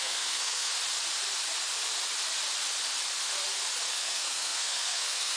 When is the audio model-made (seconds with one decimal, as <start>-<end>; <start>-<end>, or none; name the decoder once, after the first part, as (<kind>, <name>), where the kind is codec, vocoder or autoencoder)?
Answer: 0.0-0.7 (codec, SNAC); 3.9-5.4